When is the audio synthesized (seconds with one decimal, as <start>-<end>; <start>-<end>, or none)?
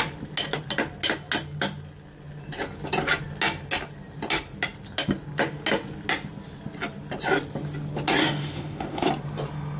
8.2-9.1